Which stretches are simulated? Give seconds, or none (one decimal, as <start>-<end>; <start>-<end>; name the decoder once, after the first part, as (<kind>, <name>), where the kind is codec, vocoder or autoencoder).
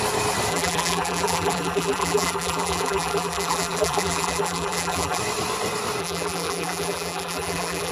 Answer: 0.5-5.2 (vocoder, BigVGAN v2); 6.0-7.9